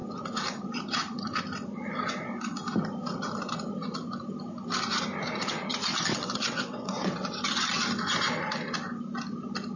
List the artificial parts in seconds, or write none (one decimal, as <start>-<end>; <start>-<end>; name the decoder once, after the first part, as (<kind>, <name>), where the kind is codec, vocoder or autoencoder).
6.1-7.4 (vocoder, WaveNeXt)